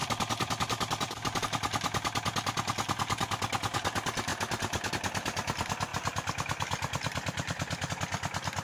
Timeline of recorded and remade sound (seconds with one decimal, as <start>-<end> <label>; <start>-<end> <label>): 0.0-1.4 remade; 1.4-4.3 recorded; 4.3-4.9 remade; 4.9-5.9 recorded; 5.9-7.9 remade; 7.9-8.6 recorded